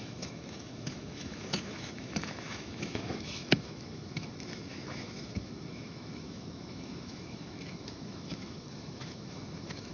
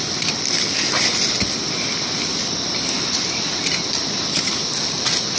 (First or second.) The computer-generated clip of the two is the first